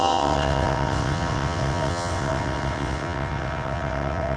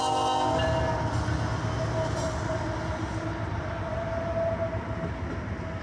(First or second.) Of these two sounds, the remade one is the first